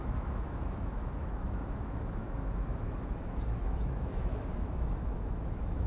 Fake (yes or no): yes